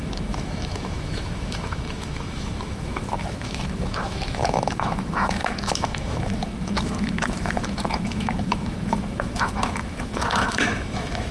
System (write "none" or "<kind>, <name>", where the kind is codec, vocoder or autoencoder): autoencoder, DAC-VAE